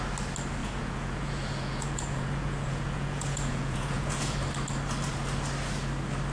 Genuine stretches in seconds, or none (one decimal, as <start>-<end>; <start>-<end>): 0.0-0.6; 4.4-6.3